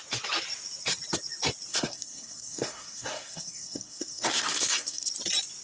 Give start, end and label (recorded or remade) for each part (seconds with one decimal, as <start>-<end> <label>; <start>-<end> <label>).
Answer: 0.0-1.7 recorded; 1.7-5.1 remade; 5.1-5.6 recorded